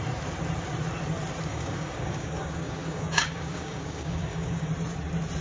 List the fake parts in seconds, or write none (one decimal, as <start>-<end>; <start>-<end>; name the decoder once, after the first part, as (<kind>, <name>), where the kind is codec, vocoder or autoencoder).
1.5-4.7 (codec, DAC)